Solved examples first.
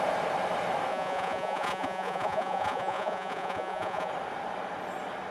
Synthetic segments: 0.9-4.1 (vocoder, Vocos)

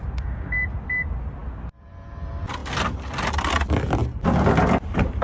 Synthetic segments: none

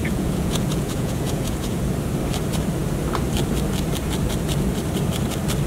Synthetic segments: 0.0-1.8 (vocoder, Vocos)

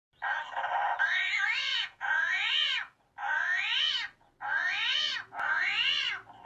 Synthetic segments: 1.7-2.5 (vocoder, Vocos)

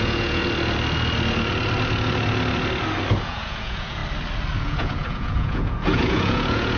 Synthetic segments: 0.0-0.4 (vocoder, Vocos); 3.2-4.0; 4.6-6.8